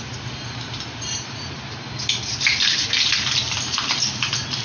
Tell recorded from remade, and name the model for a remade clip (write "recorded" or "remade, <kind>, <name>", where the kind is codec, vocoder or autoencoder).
recorded